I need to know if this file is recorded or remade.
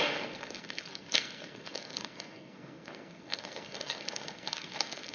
remade